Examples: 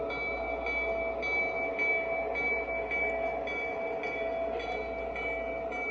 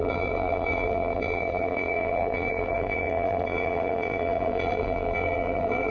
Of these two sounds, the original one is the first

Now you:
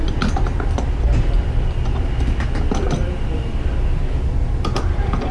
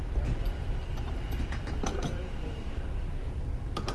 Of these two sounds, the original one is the first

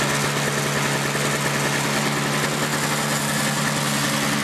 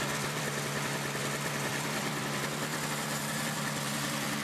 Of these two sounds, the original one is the first